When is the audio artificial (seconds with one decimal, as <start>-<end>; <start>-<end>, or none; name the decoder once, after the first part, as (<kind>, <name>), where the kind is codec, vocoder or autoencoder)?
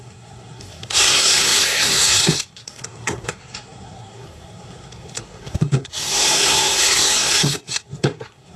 0.0-8.6 (codec, SNAC)